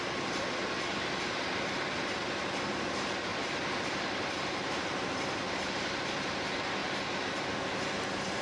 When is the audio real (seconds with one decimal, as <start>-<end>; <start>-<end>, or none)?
0.0-3.3; 6.1-6.8; 7.4-8.4